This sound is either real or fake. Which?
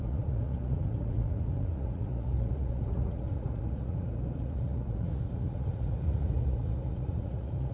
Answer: fake